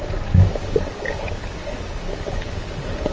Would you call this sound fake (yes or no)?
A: yes